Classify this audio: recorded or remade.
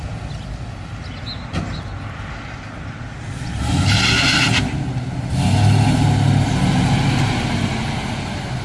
recorded